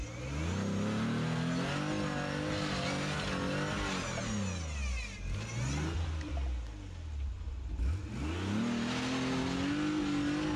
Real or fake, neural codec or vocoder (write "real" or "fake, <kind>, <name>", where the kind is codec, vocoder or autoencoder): real